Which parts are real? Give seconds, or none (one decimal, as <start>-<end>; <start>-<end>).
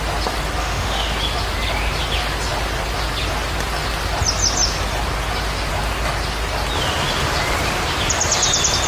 0.0-0.6; 1.1-8.9